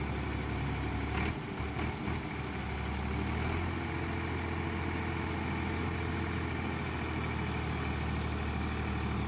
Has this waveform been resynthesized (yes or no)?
no